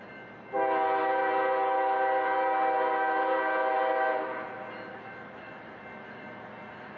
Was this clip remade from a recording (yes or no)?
no